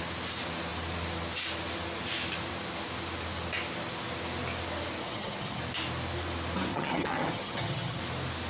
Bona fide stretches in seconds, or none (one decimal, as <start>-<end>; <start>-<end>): 0.0-5.0; 5.6-6.7; 8.0-8.5